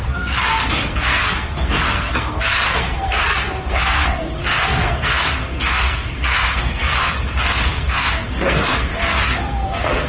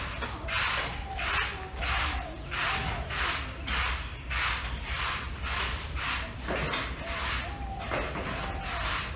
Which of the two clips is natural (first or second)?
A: second